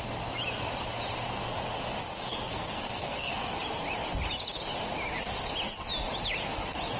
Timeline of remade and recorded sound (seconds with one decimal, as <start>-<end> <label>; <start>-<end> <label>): 0.0-2.2 recorded; 2.2-3.6 remade; 3.6-7.0 recorded